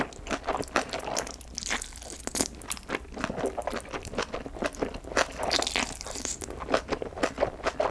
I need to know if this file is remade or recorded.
recorded